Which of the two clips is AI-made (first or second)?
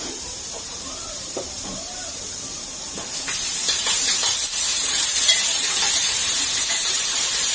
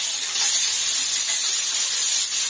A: first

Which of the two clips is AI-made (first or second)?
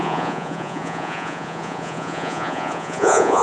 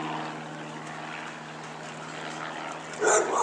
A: first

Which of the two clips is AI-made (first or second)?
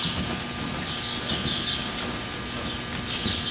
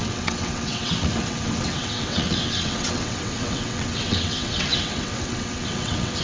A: second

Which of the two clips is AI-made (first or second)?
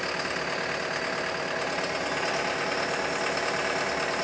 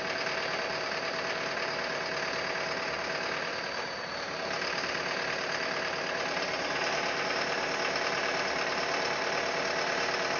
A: second